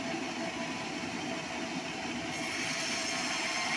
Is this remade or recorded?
recorded